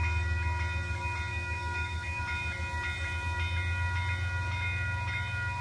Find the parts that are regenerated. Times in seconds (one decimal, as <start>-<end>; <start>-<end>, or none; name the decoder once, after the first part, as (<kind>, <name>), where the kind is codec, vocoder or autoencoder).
1.3-2.2 (autoencoder, DAC-VAE)